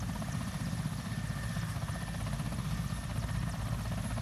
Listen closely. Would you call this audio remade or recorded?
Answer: recorded